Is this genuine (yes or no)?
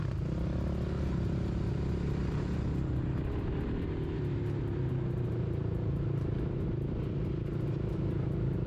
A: yes